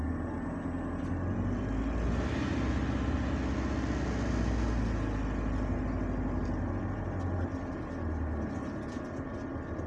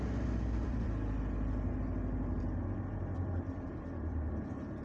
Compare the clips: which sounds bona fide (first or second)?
first